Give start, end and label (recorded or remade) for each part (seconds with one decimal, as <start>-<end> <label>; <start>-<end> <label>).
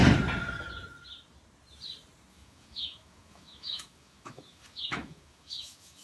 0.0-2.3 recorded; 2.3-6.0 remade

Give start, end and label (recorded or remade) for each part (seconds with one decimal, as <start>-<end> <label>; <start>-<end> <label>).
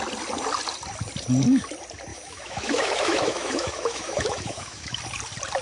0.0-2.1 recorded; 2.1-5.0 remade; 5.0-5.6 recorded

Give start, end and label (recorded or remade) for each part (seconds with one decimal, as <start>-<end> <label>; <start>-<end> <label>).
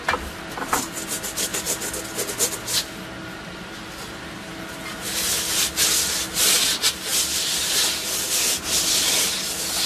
0.0-9.9 recorded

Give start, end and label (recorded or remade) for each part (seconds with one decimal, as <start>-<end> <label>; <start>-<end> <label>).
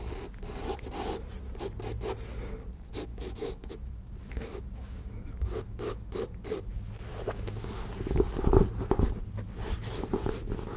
0.0-3.1 recorded; 3.1-5.8 remade; 5.8-7.1 recorded; 7.1-7.8 remade; 7.8-10.8 recorded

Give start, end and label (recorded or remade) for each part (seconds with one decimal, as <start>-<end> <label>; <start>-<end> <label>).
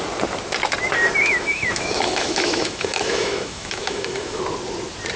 0.0-1.3 recorded; 1.3-4.4 remade; 4.4-5.2 recorded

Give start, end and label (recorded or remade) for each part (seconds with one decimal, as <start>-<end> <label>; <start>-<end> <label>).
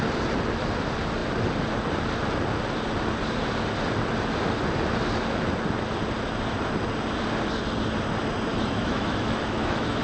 0.0-8.5 recorded; 8.5-10.0 remade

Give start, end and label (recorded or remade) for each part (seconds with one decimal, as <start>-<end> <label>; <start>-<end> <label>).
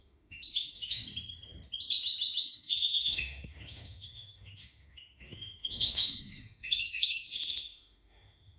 0.0-1.0 remade; 1.0-2.4 recorded; 2.4-8.6 remade